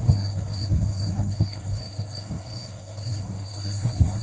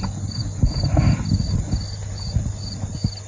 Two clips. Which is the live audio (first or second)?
second